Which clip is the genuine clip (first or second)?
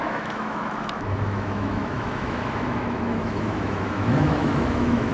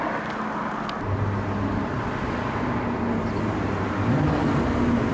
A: second